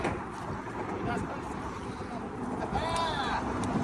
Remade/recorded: recorded